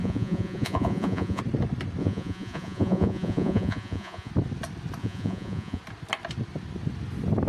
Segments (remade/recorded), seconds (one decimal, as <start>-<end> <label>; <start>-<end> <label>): 0.0-1.4 remade; 1.4-2.0 recorded; 2.0-4.3 remade; 4.3-5.0 recorded; 5.0-5.8 remade; 5.8-7.5 recorded